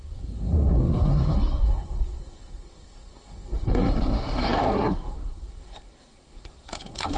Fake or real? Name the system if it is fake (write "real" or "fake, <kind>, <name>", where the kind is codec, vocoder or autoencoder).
fake, codec, SNAC